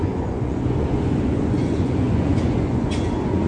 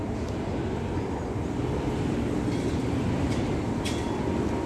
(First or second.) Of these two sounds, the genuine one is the second